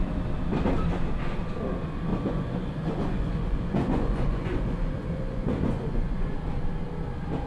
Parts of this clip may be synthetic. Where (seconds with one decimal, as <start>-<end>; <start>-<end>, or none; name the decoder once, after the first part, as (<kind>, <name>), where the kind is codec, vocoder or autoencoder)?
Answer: 2.1-6.3 (vocoder, Vocos)